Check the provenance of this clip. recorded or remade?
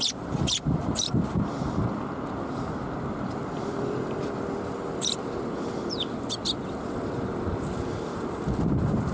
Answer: remade